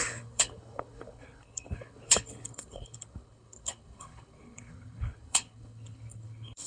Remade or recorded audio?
remade